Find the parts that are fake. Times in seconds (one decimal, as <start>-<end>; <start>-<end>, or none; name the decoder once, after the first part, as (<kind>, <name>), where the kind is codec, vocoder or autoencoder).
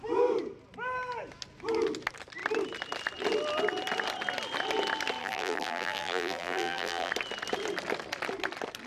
5.2-7.1 (vocoder, BigVGAN v2)